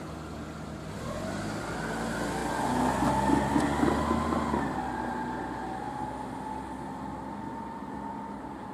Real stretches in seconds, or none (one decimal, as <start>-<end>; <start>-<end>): 0.0-8.7